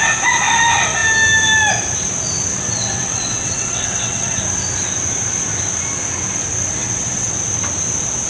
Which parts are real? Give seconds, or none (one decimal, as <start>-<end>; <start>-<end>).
0.0-2.5; 4.4-6.8; 7.3-8.3